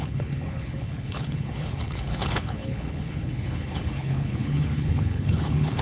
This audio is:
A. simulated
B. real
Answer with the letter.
A